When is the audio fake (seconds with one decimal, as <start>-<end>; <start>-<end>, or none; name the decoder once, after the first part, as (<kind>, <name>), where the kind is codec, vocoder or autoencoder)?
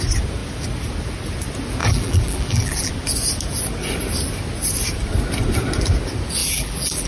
1.8-2.9 (vocoder, BigVGAN v2); 6.4-7.1